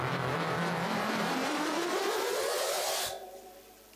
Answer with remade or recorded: recorded